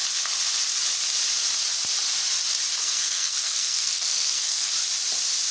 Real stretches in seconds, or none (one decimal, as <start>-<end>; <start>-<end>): 0.0-2.8; 4.7-5.5